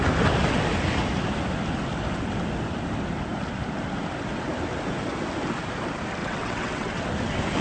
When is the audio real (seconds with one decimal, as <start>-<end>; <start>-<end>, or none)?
0.0-6.2; 7.0-7.6